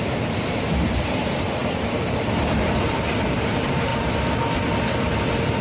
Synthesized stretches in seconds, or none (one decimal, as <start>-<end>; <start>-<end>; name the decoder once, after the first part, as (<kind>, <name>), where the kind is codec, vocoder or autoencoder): 0.0-3.9 (vocoder, BigVGAN v2)